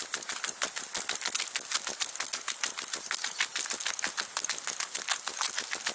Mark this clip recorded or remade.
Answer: recorded